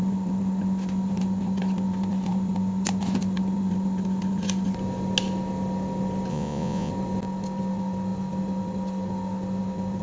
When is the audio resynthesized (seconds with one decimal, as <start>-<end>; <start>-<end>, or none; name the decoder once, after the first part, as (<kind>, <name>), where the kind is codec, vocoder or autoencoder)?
6.3-6.9 (vocoder, Vocos)